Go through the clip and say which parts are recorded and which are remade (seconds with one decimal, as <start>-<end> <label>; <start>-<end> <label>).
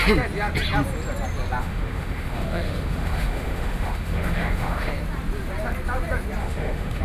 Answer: 0.0-1.6 recorded; 1.6-4.9 remade; 4.9-6.4 recorded; 6.4-7.0 remade